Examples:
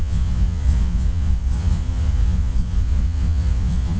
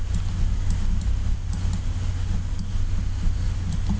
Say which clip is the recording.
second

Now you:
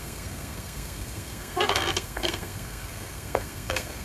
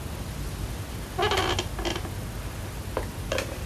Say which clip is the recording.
second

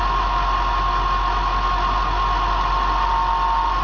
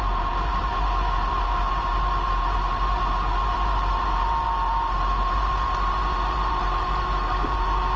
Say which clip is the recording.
first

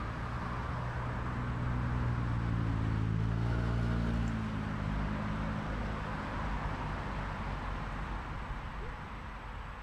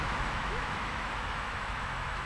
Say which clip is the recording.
first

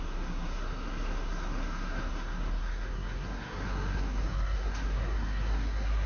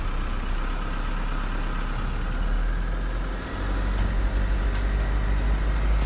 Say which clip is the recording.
second